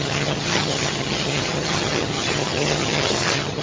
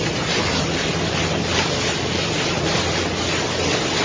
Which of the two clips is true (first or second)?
second